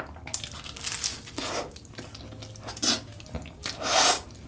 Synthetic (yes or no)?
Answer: no